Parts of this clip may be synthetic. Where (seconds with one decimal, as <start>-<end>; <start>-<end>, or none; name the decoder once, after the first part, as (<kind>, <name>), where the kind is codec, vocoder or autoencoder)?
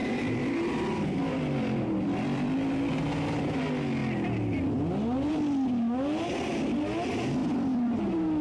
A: 0.0-3.6 (vocoder, BigVGAN v2); 7.4-8.0